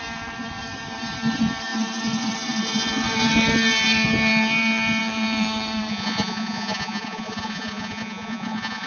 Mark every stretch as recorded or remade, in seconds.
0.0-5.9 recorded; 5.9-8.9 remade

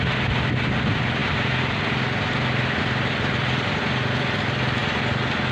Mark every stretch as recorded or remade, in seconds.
0.0-5.5 recorded

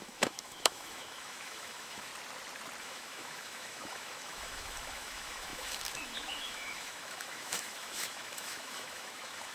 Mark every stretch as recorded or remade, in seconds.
0.0-2.1 remade; 2.1-2.8 recorded; 2.8-9.5 remade

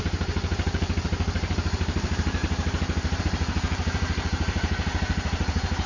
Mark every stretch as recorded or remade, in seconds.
0.0-2.4 remade; 2.4-3.2 recorded; 3.2-5.9 remade

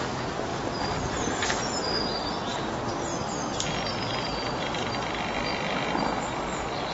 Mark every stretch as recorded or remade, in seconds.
0.0-6.9 recorded

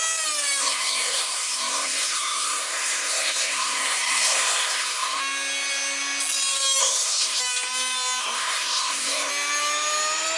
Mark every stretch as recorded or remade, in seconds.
0.0-0.6 recorded; 0.6-5.2 remade; 5.2-6.8 recorded; 6.8-7.4 remade; 7.4-8.2 recorded; 8.2-9.3 remade; 9.3-10.4 recorded